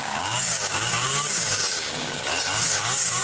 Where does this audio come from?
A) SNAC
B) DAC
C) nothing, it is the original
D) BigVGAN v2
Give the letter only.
B